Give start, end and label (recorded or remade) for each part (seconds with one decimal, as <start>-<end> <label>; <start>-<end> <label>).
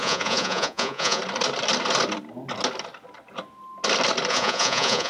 0.0-1.2 remade; 1.2-4.3 recorded; 4.3-5.1 remade